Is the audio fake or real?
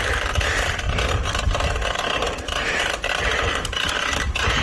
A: fake